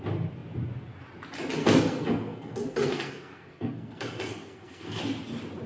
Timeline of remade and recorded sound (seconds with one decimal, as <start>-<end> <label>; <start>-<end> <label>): 0.0-1.6 recorded; 1.6-5.0 remade; 5.0-5.7 recorded